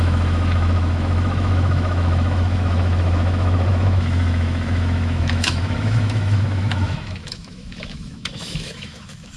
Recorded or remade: remade